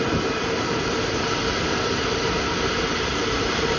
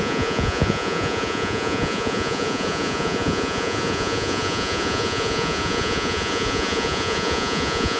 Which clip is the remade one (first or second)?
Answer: second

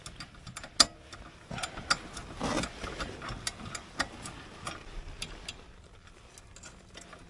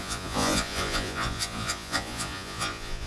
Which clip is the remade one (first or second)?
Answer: second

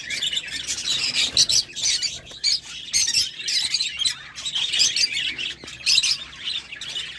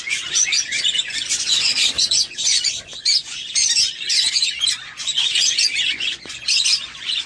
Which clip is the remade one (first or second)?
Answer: second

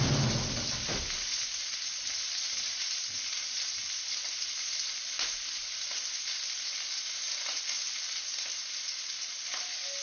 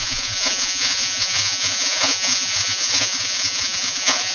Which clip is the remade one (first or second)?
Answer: second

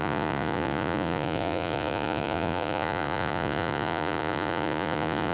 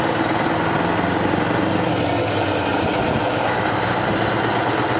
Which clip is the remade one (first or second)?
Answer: first